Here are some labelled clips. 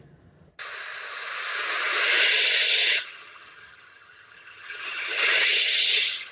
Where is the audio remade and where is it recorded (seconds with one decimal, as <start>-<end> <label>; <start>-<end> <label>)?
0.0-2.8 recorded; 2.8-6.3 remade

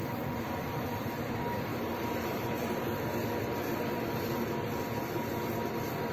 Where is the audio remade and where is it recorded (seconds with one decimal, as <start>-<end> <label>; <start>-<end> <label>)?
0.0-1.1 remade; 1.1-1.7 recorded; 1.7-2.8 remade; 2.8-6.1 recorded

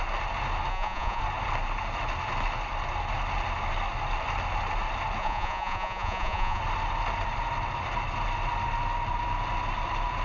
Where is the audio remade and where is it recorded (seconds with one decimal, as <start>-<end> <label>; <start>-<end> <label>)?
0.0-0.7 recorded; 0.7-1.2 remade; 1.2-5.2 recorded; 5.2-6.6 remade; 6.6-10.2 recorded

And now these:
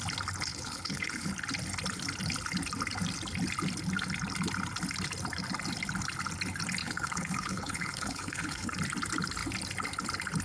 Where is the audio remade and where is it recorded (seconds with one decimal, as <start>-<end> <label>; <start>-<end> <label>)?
0.0-0.5 recorded; 0.5-1.3 remade; 1.3-6.8 recorded; 6.8-8.7 remade; 8.7-10.4 recorded

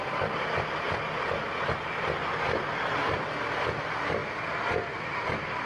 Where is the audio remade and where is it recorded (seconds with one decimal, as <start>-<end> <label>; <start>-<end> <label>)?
0.0-5.7 recorded

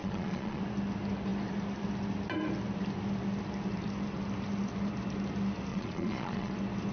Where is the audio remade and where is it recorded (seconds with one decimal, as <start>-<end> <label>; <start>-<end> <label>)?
0.0-0.6 remade; 0.6-5.7 recorded; 5.7-6.5 remade; 6.5-6.9 recorded